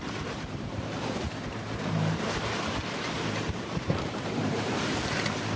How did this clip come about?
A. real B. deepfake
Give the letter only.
B